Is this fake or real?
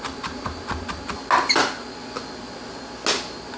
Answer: real